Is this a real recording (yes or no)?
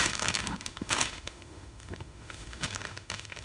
no